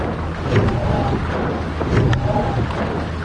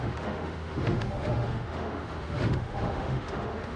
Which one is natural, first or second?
first